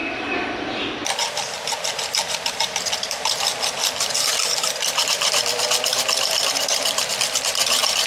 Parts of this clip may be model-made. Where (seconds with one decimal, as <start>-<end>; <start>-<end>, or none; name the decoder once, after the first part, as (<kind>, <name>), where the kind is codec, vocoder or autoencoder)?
0.0-1.0 (vocoder, BigVGAN v2); 2.5-3.8; 5.0-8.1